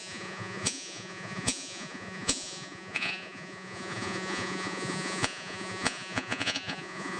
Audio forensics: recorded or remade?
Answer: remade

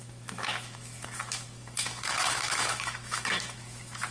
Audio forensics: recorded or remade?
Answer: remade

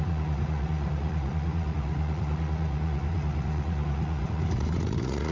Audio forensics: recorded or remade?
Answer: remade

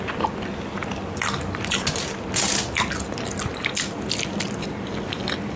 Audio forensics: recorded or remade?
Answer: recorded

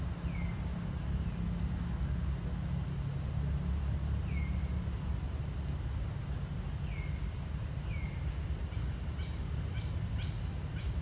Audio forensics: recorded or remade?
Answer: recorded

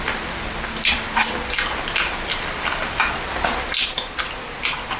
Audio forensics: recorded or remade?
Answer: recorded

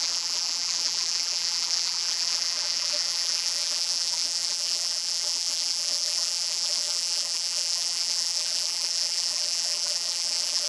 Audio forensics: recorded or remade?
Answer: remade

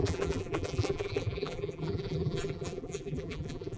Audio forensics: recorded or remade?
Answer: remade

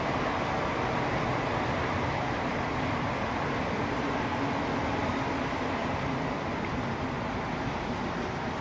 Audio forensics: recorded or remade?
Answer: recorded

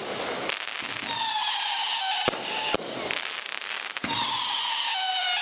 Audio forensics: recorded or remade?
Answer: recorded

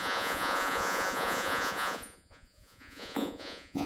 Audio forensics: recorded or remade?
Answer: remade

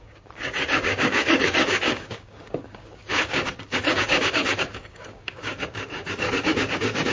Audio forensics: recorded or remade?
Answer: remade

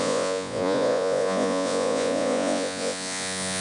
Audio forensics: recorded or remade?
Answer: remade